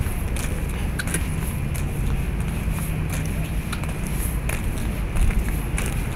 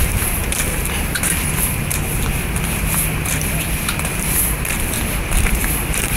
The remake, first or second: second